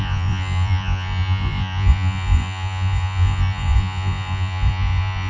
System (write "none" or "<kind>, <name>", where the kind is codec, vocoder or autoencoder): vocoder, Vocos